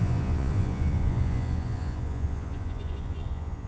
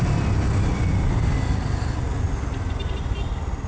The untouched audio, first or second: second